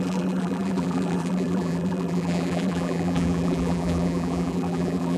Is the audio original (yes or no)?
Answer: no